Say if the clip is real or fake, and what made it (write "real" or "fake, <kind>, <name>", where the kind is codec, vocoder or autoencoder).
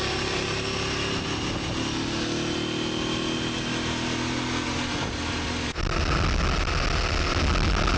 real